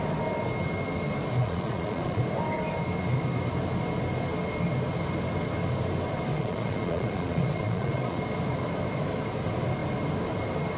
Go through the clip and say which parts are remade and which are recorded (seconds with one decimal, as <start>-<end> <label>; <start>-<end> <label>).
0.0-1.4 recorded; 1.4-2.2 remade; 2.2-6.3 recorded; 6.3-8.2 remade; 8.2-10.8 recorded